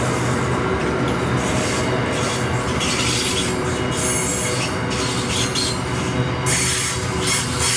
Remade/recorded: recorded